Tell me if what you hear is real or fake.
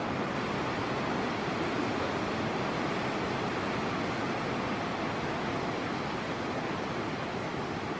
real